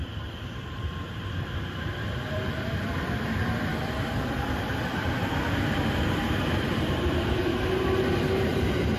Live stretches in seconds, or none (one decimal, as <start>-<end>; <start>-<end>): 7.4-8.5

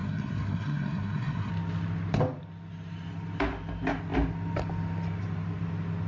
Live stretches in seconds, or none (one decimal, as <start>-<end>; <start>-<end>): 1.5-6.1